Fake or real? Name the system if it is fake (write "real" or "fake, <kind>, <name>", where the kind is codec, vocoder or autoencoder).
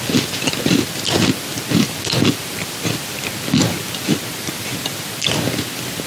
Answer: real